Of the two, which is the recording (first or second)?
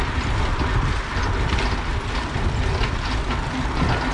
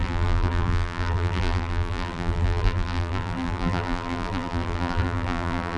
first